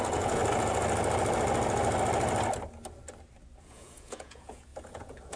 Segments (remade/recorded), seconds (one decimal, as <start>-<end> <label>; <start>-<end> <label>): 0.0-0.4 remade; 0.4-3.6 recorded; 3.6-5.4 remade

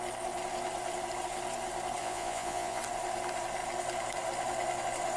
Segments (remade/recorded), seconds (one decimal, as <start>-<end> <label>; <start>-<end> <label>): 0.0-2.0 recorded; 2.0-2.8 remade; 2.8-5.2 recorded

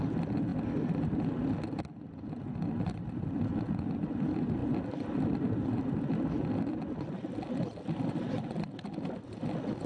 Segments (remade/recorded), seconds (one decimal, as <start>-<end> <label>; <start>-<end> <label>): 0.0-9.9 recorded

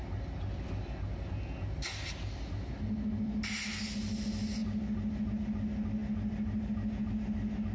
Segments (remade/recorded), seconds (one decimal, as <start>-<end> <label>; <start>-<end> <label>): 0.0-7.7 recorded

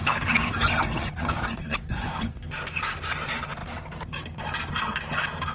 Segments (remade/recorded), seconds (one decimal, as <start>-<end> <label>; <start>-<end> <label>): 0.0-1.2 recorded; 1.2-2.4 remade; 2.4-5.5 recorded

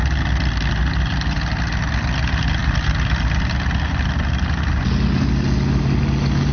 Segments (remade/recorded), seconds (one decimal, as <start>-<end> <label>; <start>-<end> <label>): 0.0-6.5 recorded